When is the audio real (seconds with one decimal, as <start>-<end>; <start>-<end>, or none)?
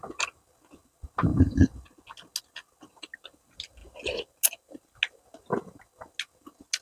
0.0-6.8